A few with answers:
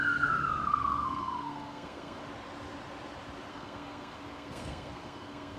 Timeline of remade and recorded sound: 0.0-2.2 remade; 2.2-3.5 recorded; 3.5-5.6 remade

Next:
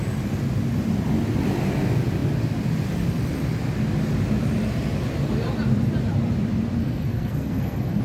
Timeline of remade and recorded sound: 0.0-6.8 recorded; 6.8-8.0 remade

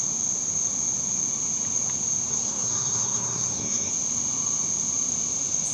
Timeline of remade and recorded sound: 0.0-2.3 recorded; 2.3-3.9 remade; 3.9-5.7 recorded